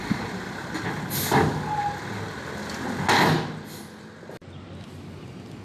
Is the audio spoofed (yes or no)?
no